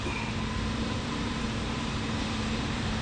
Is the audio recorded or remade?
remade